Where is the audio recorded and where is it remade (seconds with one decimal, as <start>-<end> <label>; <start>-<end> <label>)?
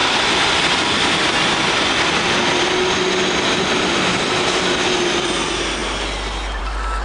0.0-7.0 recorded